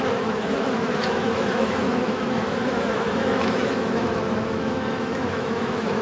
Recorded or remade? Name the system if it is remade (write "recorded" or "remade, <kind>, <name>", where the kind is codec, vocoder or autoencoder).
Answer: remade, autoencoder, DAC-VAE